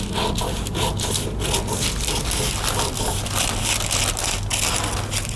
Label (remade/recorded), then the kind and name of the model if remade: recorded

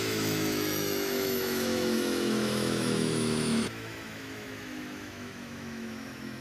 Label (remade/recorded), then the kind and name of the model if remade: remade, autoencoder, DAC-VAE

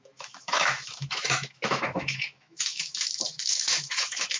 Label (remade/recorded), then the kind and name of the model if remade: remade, autoencoder, DAC-VAE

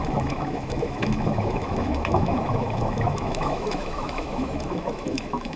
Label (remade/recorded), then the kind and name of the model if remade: remade, autoencoder, DAC-VAE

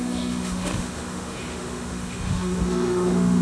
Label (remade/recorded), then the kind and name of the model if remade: remade, autoencoder, DAC-VAE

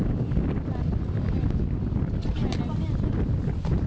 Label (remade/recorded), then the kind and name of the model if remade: recorded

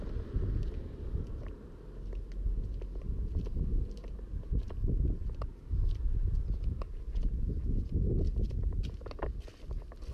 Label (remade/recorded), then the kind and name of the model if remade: recorded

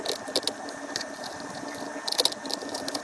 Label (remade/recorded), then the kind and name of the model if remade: recorded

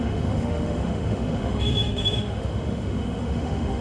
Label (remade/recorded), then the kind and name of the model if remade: remade, autoencoder, DAC-VAE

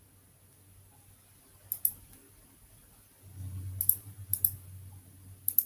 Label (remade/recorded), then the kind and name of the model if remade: recorded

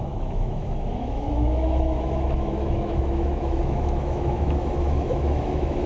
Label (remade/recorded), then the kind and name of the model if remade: remade, autoencoder, DAC-VAE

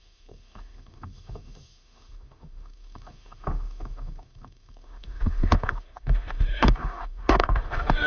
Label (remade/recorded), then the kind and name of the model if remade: remade, autoencoder, DAC-VAE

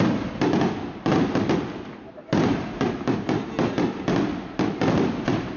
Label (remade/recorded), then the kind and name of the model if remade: recorded